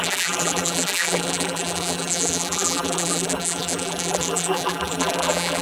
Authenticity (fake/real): fake